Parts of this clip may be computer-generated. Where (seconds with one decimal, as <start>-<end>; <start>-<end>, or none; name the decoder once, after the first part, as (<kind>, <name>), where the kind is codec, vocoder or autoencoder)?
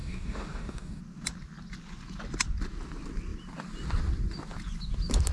0.0-1.0 (codec, DAC)